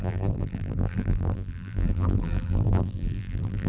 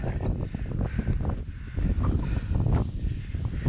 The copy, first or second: first